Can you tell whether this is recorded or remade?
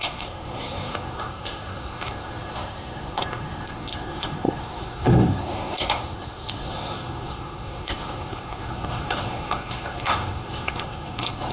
remade